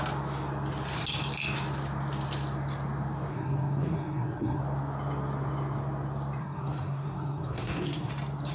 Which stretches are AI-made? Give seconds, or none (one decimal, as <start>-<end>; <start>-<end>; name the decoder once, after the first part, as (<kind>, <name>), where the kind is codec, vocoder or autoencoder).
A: 3.3-4.6 (codec, SNAC); 6.4-8.1